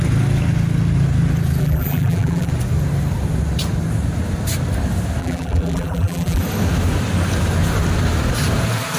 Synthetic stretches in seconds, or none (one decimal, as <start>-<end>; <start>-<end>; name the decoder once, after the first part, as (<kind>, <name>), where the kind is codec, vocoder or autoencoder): 1.6-2.5 (vocoder, BigVGAN v2); 5.2-6.4